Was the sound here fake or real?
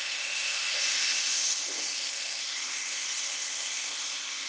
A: fake